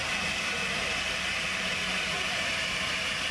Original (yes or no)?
yes